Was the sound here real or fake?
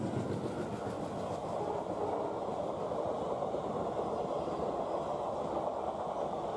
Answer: real